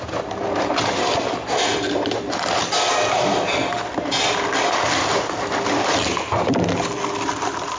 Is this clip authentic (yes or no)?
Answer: yes